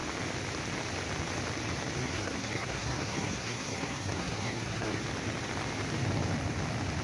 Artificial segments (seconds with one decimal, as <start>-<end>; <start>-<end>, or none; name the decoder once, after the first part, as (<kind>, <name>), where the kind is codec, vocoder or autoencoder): 2.0-5.0 (codec, SNAC)